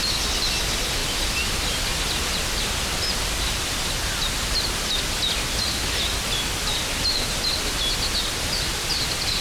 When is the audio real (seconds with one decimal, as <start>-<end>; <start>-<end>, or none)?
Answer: 0.0-9.4